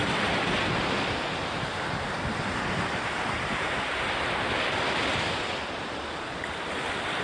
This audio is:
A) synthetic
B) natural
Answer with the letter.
B